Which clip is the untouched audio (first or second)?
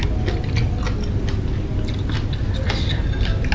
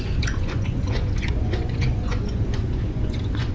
first